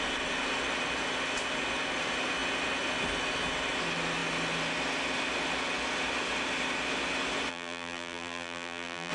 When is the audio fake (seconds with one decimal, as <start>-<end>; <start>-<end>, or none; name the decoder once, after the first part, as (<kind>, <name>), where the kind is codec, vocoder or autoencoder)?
7.5-9.1 (vocoder, BigVGAN v2)

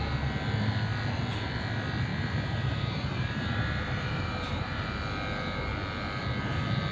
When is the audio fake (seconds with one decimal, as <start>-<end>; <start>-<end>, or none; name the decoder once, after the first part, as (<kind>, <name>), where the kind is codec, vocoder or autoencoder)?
2.1-4.8 (vocoder, BigVGAN v2)

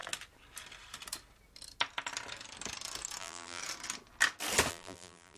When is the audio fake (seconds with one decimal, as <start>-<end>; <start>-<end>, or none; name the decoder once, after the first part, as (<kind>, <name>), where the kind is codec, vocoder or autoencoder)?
3.2-3.6 (vocoder, BigVGAN v2); 4.7-5.4

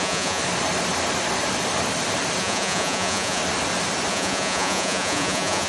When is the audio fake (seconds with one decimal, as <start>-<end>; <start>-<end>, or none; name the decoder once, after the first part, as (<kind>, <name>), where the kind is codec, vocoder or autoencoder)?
0.0-0.4 (vocoder, Vocos); 2.4-3.4; 4.1-5.7

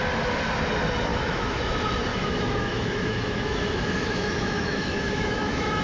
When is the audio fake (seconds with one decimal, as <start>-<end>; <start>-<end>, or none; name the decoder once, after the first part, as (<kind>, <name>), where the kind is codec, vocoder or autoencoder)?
1.1-1.6 (autoencoder, DAC-VAE); 2.1-5.8

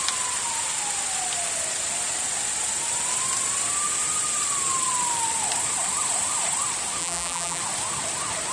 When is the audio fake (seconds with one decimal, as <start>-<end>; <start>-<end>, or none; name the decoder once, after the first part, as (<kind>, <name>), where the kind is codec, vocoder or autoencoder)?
7.0-7.6 (vocoder, BigVGAN v2)